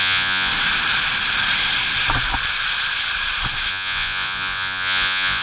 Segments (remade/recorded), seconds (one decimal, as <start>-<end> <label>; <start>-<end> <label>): 0.0-0.5 remade; 0.5-3.7 recorded; 3.7-5.4 remade